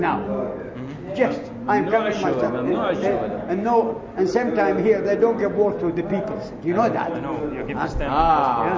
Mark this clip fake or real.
real